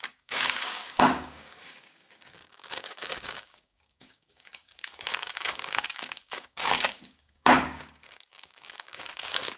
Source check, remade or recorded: remade